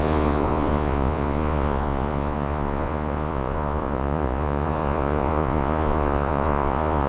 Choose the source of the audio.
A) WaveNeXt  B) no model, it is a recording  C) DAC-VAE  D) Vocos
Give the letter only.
D